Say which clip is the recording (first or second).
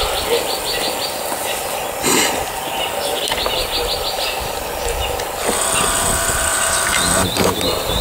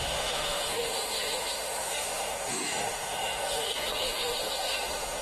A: first